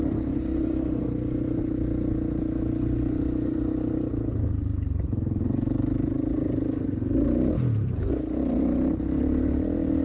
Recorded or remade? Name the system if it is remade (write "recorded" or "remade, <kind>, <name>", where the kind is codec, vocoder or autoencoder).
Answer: recorded